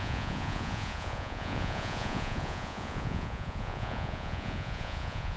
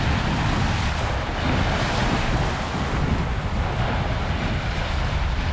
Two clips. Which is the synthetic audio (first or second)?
first